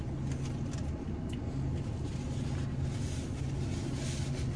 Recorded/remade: recorded